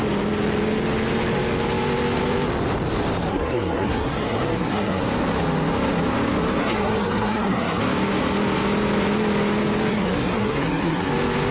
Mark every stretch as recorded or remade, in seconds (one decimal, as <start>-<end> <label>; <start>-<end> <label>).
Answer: 0.0-3.3 recorded; 3.3-5.0 remade; 5.0-6.6 recorded; 6.6-7.8 remade; 7.8-9.9 recorded; 9.9-11.1 remade; 11.1-11.5 recorded